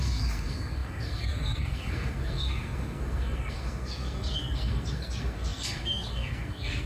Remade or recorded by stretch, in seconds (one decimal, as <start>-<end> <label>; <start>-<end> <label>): 0.0-6.9 remade